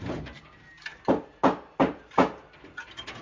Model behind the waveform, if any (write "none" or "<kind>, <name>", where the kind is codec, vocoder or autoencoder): none